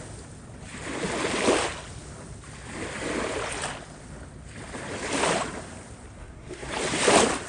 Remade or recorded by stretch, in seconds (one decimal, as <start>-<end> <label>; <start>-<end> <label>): 0.0-6.2 recorded; 6.2-6.7 remade; 6.7-7.5 recorded